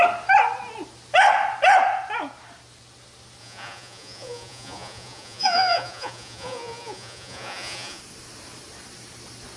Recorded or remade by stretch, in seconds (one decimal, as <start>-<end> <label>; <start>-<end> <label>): 0.0-3.4 recorded; 3.4-8.0 remade; 8.0-9.6 recorded